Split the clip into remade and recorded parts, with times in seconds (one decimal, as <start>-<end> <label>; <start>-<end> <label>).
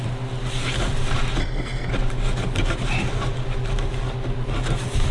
0.0-1.4 recorded; 1.4-1.9 remade; 1.9-5.1 recorded